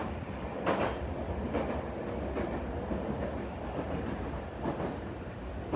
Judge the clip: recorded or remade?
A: recorded